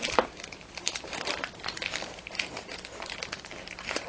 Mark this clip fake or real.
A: fake